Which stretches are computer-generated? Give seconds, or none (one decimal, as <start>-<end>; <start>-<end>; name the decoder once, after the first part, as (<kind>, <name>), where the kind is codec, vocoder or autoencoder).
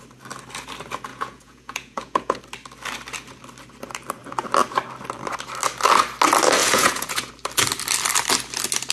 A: 1.1-2.4 (vocoder, Vocos); 6.6-7.3